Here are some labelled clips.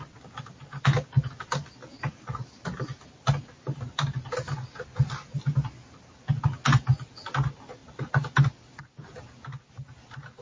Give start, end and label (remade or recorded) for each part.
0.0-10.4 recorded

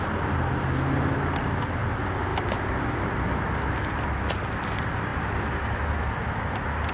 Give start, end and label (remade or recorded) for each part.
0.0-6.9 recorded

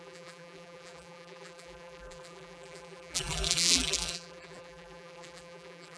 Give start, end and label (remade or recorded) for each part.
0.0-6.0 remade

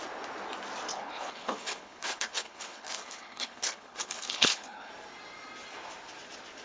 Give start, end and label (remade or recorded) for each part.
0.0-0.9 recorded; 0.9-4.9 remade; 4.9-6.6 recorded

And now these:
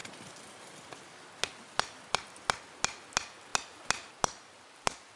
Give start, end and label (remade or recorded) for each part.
0.0-5.2 recorded

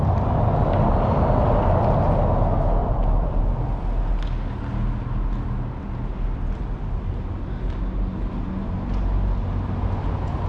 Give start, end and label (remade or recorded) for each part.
0.0-2.8 recorded; 2.8-3.4 remade; 3.4-10.5 recorded

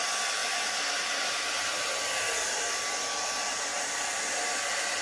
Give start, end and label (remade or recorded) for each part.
0.0-5.0 recorded

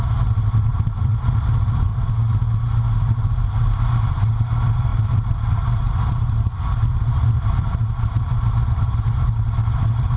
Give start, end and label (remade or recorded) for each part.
0.0-1.9 remade; 1.9-4.1 recorded; 4.1-10.2 remade